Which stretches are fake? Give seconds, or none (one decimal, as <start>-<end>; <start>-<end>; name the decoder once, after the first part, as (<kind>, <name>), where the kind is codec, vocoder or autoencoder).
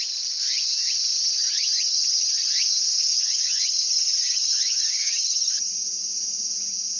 1.1-2.5 (vocoder, HiFi-GAN); 3.1-5.7